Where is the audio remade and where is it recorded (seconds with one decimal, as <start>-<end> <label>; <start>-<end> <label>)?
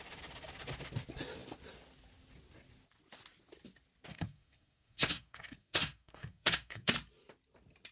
0.0-4.1 recorded; 4.1-6.9 remade; 6.9-7.9 recorded